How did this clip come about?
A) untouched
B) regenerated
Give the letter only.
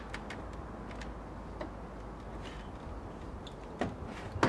A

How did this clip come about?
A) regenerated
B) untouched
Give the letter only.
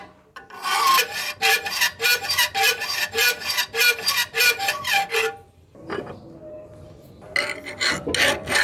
B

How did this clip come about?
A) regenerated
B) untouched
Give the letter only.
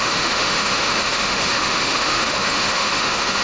A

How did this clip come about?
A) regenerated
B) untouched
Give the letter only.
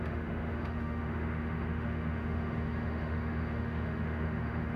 A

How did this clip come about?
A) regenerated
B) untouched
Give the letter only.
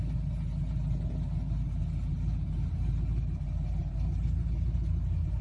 B